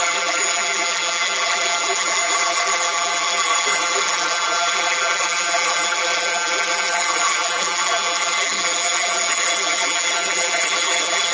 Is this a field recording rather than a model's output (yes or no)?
no